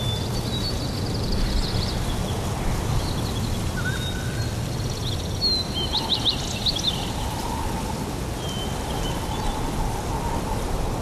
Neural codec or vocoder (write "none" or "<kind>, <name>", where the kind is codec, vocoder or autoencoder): none